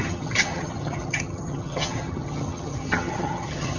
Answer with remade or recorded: remade